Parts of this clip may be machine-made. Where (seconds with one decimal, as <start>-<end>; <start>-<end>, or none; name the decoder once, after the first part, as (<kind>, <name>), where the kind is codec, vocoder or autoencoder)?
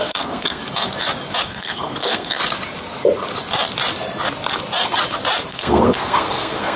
0.0-0.6 (codec, SNAC); 1.4-2.4; 5.5-6.8